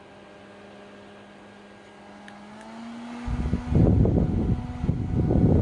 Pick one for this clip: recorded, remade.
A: recorded